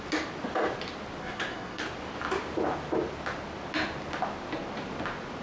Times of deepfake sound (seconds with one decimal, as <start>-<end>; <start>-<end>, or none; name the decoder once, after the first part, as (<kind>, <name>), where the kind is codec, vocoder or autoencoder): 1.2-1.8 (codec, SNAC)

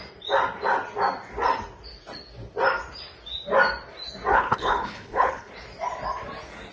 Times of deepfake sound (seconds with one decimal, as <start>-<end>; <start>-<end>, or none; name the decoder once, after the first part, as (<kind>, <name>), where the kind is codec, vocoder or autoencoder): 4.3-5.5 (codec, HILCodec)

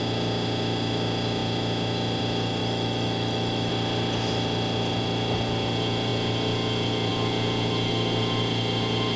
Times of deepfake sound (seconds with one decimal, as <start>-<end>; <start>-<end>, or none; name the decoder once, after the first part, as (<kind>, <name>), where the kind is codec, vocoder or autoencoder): 2.6-3.7 (autoencoder, DAC-VAE)

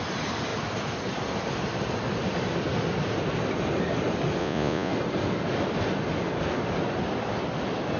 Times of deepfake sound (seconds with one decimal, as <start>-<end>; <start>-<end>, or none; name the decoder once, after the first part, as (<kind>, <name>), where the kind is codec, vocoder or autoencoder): 4.4-4.9 (vocoder, Vocos)

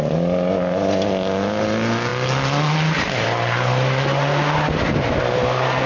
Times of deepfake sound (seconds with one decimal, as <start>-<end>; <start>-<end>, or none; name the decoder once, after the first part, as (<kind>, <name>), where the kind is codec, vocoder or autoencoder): none

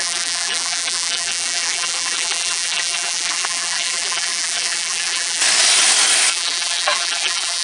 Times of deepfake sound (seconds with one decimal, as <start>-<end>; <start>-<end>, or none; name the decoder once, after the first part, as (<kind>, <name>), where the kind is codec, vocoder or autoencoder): 0.0-5.4 (vocoder, BigVGAN v2); 6.3-7.6

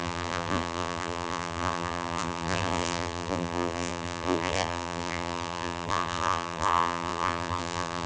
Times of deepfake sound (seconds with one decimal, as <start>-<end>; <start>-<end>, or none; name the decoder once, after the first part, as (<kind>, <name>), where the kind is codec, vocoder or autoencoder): 0.0-8.1 (vocoder, BigVGAN v2)

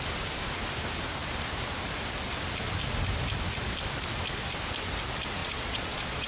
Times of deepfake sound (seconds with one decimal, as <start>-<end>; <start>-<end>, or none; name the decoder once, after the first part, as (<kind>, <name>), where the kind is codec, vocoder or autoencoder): 5.4-6.3 (vocoder, Vocos)